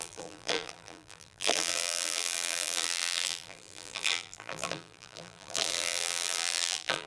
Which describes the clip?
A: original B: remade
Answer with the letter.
B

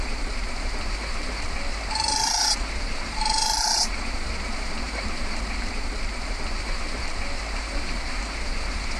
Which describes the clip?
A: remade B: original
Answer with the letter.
A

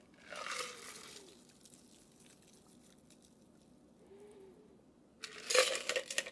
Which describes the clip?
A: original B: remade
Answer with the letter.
A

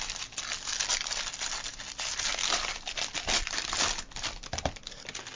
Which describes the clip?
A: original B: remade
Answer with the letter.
B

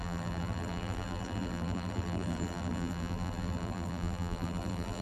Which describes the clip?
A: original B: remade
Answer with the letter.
B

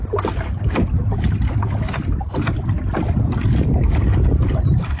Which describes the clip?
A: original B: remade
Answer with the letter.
B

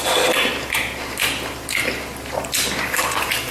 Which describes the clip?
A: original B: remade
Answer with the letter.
B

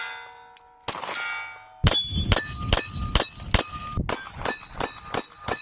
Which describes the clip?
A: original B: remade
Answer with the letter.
A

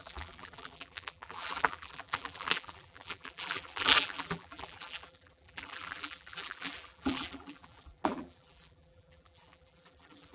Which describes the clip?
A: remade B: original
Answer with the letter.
A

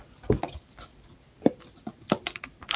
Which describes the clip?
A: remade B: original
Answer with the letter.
B